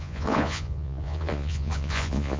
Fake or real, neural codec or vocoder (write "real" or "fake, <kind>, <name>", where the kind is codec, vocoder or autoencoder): fake, vocoder, Vocos